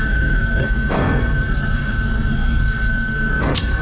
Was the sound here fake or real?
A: fake